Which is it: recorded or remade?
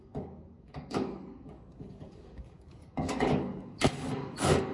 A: remade